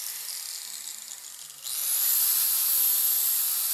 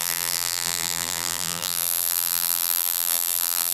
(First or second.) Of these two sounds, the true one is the first